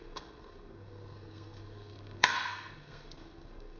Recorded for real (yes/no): no